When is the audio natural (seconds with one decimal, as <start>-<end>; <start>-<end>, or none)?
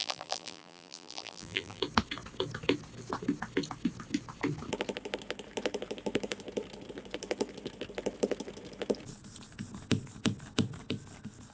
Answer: 1.8-11.5